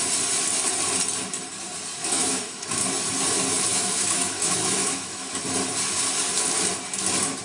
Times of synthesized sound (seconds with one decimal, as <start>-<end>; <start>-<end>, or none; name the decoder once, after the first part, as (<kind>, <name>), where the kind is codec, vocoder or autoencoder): 2.0-2.8 (autoencoder, DAC-VAE); 3.7-5.4